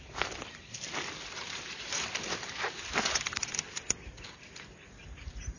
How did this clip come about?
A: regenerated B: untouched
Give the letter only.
B